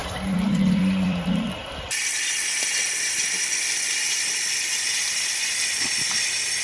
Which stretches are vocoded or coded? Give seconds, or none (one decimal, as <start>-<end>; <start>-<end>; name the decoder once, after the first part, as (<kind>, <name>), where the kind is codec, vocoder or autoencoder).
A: 0.0-1.9 (vocoder, BigVGAN v2); 4.9-5.6